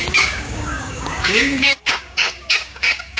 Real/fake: fake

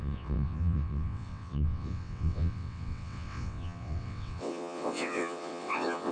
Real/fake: fake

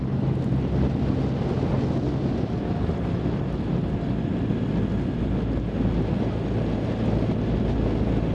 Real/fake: real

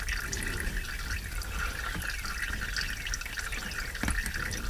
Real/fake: real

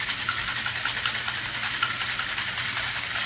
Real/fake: real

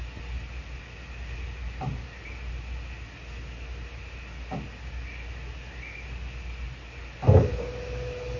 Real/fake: real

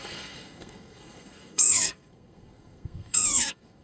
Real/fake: fake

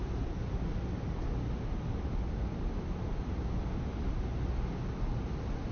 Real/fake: real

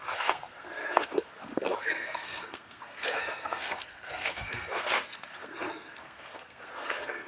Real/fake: fake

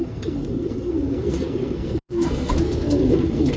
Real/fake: fake